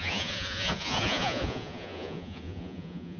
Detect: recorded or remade remade